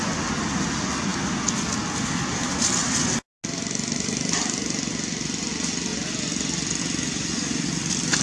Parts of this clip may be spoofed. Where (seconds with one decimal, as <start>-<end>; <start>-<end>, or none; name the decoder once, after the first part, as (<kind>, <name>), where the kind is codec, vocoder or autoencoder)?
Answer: none